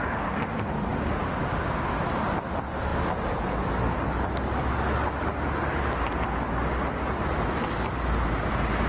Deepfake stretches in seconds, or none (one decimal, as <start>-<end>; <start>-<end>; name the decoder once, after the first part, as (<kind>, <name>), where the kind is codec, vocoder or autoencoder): 1.2-1.7 (codec, DAC)